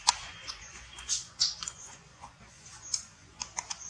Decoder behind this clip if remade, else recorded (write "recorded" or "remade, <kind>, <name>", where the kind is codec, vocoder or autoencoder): remade, vocoder, Vocos